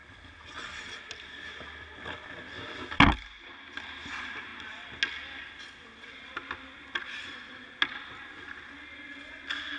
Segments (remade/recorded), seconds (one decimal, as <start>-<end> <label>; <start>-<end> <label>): 0.0-9.8 recorded